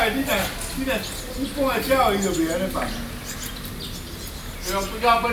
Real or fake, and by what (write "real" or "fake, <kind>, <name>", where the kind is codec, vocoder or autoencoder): real